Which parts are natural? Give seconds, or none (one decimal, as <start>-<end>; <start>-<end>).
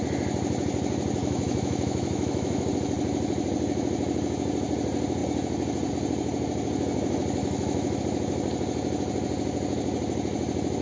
0.0-1.2; 2.7-7.4; 8.0-10.8